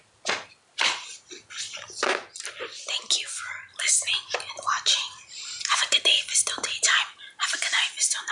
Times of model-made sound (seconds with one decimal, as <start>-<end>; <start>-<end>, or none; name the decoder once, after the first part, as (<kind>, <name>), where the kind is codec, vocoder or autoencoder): 0.0-2.1 (vocoder, BigVGAN v2); 3.7-8.3